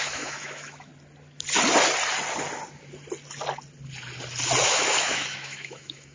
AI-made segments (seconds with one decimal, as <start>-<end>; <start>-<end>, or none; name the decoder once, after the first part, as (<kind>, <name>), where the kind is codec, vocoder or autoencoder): 0.0-0.9 (autoencoder, DAC-VAE); 4.6-6.1